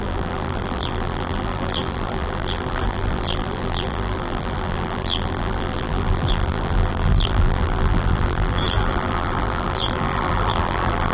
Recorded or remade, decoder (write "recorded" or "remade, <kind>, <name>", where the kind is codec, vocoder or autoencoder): remade, vocoder, BigVGAN v2